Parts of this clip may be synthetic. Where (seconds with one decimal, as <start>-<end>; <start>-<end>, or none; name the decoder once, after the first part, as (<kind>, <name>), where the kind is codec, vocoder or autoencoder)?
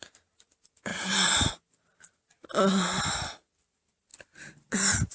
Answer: 0.9-1.5 (vocoder, BigVGAN v2)